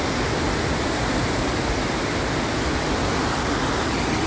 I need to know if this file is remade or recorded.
recorded